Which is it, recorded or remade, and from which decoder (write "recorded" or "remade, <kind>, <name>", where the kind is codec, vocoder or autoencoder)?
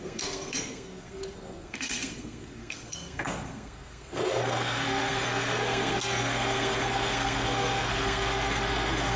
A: remade, codec, SNAC